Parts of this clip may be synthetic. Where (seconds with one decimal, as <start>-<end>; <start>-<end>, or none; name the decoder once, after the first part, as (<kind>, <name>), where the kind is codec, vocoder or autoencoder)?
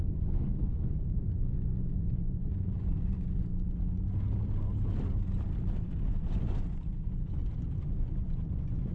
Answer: 0.0-3.5 (vocoder, Vocos); 5.8-8.9